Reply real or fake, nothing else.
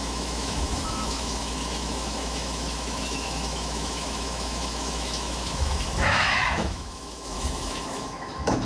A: fake